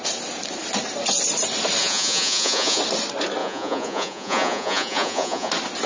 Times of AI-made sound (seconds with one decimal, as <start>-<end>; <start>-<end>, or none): 1.8-2.8; 3.4-5.5